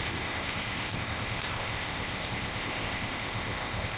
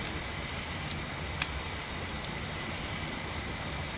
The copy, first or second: first